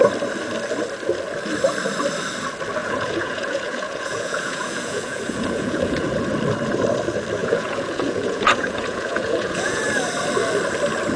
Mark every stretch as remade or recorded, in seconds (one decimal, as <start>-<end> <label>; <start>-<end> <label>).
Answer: 0.0-2.8 recorded; 2.8-6.1 remade; 6.1-7.4 recorded; 7.4-9.8 remade; 9.8-11.2 recorded